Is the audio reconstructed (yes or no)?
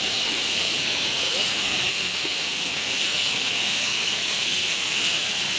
yes